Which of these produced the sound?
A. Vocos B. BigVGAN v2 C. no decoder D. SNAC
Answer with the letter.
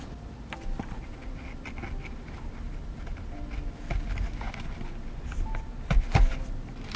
C